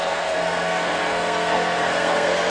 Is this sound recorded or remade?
remade